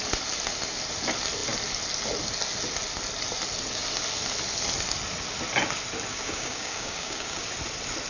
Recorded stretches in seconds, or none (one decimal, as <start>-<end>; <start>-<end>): 0.0-6.1; 7.5-8.1

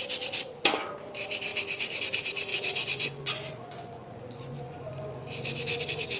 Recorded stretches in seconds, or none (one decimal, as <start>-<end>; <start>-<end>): 0.0-2.5; 5.8-6.2

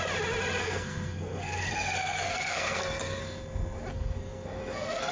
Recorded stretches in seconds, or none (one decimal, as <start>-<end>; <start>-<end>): 0.0-0.6; 3.2-3.9

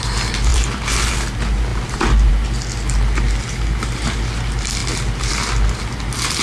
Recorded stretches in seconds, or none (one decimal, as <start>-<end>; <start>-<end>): 0.0-0.5; 1.1-6.4

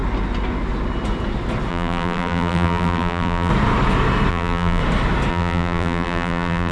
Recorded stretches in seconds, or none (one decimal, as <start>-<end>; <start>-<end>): 0.0-1.7; 3.5-4.3; 4.8-5.3